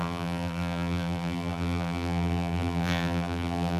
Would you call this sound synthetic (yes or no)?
yes